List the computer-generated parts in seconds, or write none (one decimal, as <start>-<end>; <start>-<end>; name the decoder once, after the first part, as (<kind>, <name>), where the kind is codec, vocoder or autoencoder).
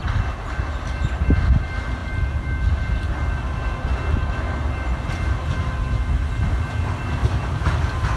7.2-7.7 (vocoder, BigVGAN v2)